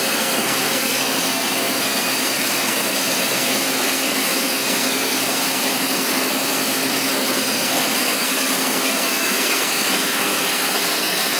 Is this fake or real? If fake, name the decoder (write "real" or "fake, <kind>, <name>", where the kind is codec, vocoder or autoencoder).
fake, codec, SNAC